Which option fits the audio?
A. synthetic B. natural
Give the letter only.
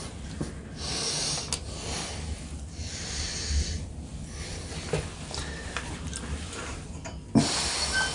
B